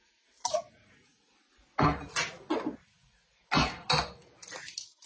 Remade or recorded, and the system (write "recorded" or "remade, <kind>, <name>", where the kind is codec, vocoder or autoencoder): recorded